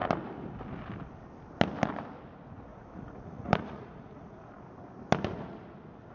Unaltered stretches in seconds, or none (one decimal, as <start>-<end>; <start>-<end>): 0.0-2.7; 4.5-6.1